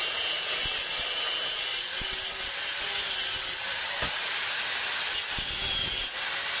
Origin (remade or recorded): remade